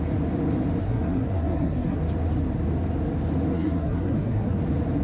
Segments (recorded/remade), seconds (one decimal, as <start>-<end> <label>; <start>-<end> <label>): 0.0-0.8 recorded; 0.8-2.0 remade; 2.0-3.5 recorded; 3.5-4.6 remade; 4.6-5.0 recorded